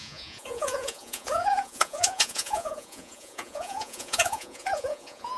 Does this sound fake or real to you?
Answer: fake